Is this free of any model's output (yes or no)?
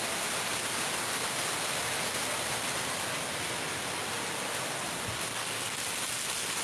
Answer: yes